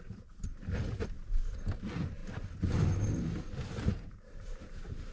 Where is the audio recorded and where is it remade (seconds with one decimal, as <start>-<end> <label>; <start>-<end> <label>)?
0.0-0.5 remade; 0.5-1.8 recorded; 1.8-2.2 remade; 2.2-3.7 recorded; 3.7-5.1 remade

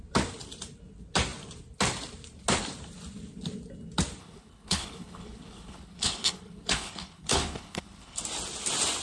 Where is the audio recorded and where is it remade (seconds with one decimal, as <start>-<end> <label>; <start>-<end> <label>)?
0.0-4.2 recorded; 4.2-8.2 remade; 8.2-9.0 recorded